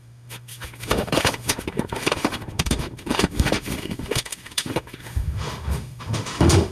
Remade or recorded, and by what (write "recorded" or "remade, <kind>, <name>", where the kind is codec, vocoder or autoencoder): remade, autoencoder, DAC-VAE